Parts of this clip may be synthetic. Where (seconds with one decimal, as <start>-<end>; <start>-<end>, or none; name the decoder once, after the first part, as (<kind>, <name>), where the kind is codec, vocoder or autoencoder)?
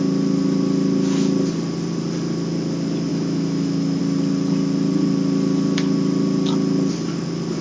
3.1-4.0 (autoencoder, DAC-VAE)